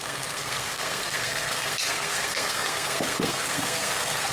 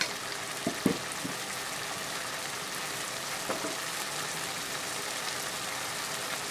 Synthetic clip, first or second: first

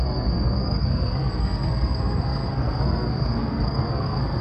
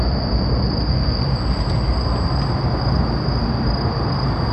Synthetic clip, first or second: first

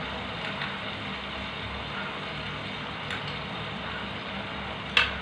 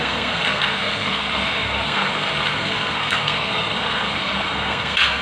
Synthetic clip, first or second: second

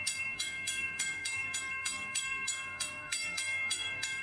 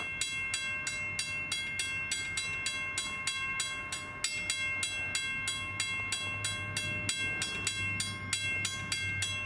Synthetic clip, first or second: first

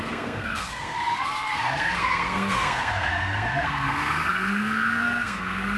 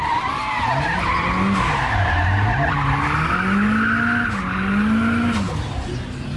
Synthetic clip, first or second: first